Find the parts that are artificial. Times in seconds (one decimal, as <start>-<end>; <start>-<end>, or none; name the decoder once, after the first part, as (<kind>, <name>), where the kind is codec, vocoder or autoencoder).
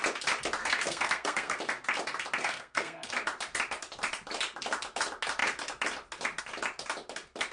0.6-1.6 (codec, SNAC); 2.4-3.1